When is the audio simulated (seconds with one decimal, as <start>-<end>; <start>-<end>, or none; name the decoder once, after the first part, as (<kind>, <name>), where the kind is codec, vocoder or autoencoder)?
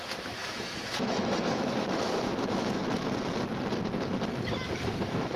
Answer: 0.0-2.8 (autoencoder, DAC-VAE); 4.9-5.4